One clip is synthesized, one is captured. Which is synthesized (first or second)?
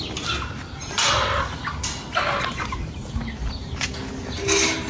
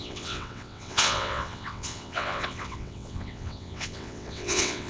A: second